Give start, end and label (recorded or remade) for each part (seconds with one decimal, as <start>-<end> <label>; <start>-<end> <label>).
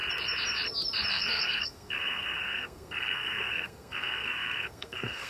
0.0-1.1 recorded; 1.1-5.3 remade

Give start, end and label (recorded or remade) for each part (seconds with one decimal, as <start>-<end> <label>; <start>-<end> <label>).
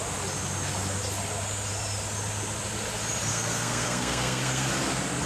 0.0-3.3 recorded; 3.3-4.7 remade; 4.7-5.3 recorded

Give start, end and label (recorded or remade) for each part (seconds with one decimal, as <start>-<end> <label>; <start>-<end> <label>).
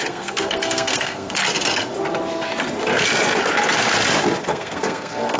0.0-1.4 remade; 1.4-4.4 recorded; 4.4-5.4 remade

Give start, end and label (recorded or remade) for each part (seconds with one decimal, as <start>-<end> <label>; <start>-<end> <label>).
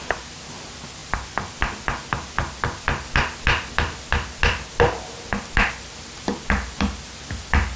0.0-7.8 recorded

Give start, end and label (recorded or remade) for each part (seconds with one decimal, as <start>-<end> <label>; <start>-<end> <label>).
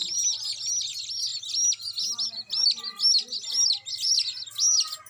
0.0-5.1 recorded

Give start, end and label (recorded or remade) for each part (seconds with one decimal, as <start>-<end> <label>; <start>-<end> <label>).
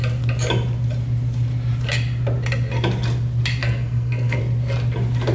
0.0-3.6 recorded; 3.6-4.4 remade; 4.4-5.3 recorded